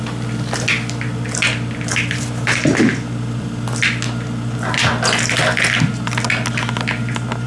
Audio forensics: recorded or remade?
recorded